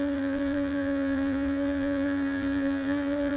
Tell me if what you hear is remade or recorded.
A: remade